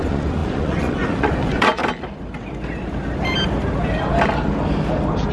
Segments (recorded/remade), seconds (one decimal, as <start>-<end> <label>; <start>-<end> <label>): 0.0-1.8 remade; 1.8-5.3 recorded